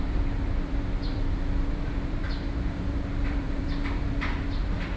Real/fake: fake